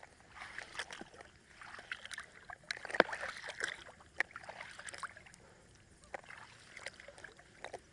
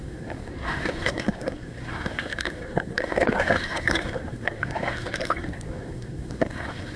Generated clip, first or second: second